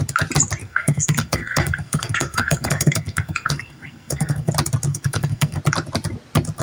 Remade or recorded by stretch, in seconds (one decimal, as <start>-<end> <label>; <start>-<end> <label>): 0.0-0.6 recorded; 0.6-4.5 remade; 4.5-4.9 recorded; 4.9-5.6 remade; 5.6-6.6 recorded